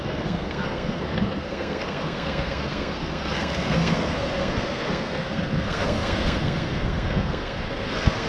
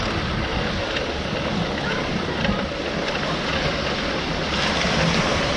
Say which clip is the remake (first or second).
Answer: first